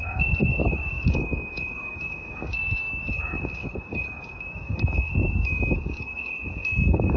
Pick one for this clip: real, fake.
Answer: fake